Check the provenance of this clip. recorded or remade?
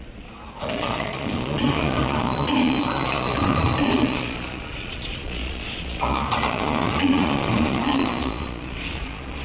remade